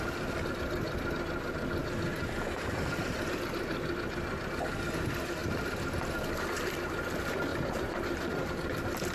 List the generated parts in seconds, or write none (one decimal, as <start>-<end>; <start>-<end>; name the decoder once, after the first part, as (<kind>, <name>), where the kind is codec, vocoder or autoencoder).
7.5-8.5 (vocoder, BigVGAN v2)